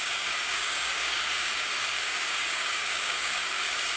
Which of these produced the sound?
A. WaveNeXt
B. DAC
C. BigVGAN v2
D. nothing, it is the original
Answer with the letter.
B